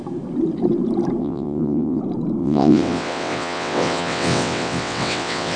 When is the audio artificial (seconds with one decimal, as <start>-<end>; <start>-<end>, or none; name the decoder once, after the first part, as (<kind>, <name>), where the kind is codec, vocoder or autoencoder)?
1.2-2.0 (vocoder, WaveNeXt); 2.4-5.6